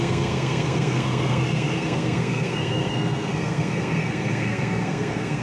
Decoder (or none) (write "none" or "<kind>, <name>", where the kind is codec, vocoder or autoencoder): codec, SNAC